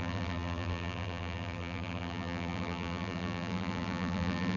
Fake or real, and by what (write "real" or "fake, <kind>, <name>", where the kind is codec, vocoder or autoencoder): fake, vocoder, BigVGAN v2